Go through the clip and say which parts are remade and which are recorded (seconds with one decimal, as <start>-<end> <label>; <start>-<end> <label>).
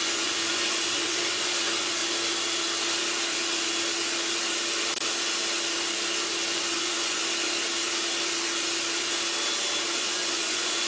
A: 0.0-2.0 remade; 2.0-6.5 recorded; 6.5-7.2 remade; 7.2-10.0 recorded; 10.0-10.9 remade